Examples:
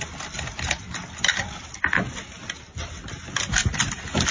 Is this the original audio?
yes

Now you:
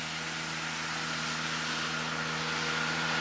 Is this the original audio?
yes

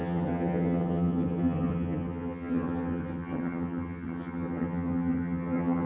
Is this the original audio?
no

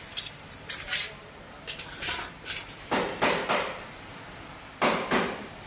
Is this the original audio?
yes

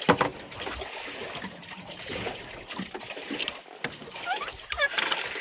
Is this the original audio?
yes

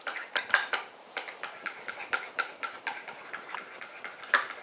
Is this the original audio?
yes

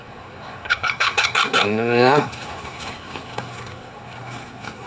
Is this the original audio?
no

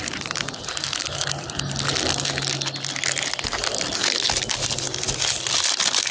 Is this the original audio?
yes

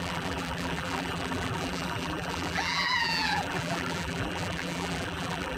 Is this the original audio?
no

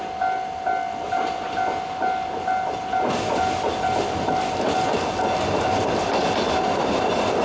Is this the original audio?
yes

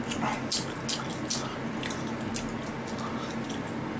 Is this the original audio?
yes